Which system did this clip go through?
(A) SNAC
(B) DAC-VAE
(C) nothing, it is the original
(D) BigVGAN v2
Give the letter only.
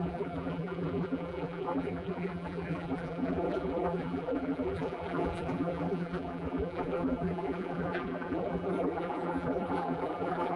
D